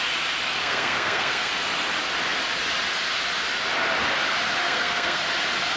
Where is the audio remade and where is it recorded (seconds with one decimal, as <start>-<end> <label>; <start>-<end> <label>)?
0.0-0.6 recorded; 0.6-1.5 remade; 1.5-4.6 recorded; 4.6-5.2 remade; 5.2-5.8 recorded